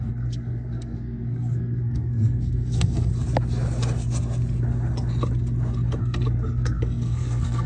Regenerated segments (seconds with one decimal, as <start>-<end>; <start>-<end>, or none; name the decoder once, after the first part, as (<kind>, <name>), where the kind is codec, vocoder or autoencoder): 0.0-3.1 (codec, SNAC); 6.0-7.7